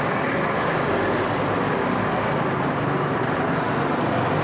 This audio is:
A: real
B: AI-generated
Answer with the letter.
A